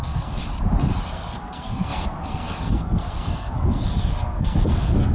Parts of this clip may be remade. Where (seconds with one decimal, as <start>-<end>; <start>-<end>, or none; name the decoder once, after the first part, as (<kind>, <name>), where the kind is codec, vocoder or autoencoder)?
0.0-0.4 (codec, SNAC); 1.1-5.1